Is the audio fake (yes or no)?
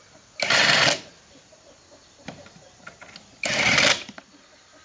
yes